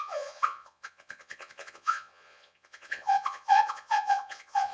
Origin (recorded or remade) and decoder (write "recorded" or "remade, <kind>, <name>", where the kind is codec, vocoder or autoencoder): remade, vocoder, Vocos